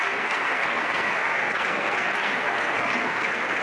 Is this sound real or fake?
fake